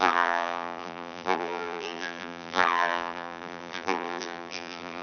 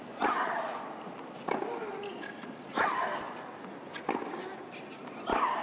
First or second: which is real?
second